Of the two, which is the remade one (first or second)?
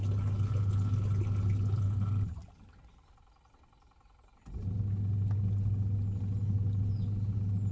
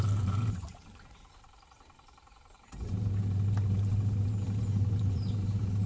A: second